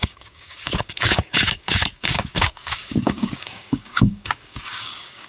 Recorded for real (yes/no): no